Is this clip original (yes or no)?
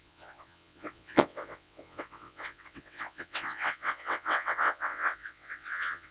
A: no